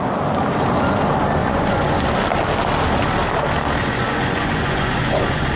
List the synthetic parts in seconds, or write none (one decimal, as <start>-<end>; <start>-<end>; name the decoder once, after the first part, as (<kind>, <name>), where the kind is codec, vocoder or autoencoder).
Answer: 1.4-2.0 (vocoder, Vocos); 3.8-5.6